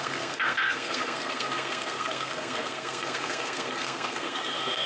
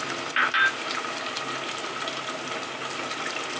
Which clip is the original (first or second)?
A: second